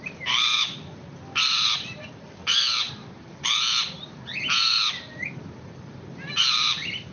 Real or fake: fake